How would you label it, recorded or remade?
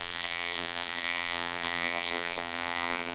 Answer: remade